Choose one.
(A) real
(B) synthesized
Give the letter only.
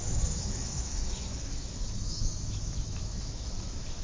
B